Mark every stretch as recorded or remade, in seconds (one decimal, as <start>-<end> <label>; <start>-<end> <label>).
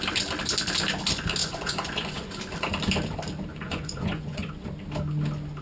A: 0.0-1.4 recorded; 1.4-2.4 remade; 2.4-3.5 recorded; 3.5-4.5 remade; 4.5-5.6 recorded